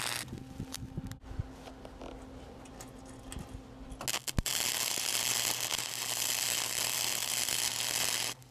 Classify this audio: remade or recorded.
recorded